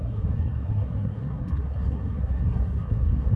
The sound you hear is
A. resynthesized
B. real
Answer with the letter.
A